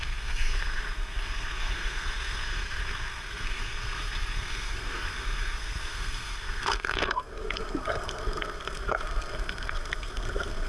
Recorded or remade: remade